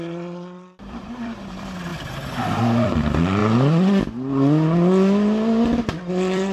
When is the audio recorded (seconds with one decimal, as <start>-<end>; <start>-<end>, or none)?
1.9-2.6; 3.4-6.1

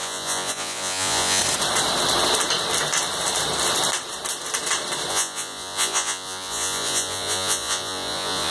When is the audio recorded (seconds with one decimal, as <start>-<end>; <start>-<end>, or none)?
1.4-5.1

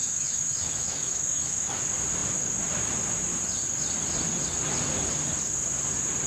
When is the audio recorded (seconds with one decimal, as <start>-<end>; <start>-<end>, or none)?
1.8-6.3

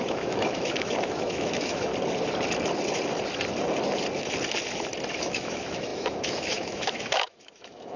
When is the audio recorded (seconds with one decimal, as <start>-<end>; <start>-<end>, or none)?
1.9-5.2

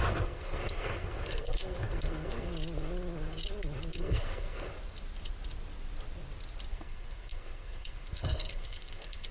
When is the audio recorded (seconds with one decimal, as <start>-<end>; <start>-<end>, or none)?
2.5-3.9; 4.7-6.7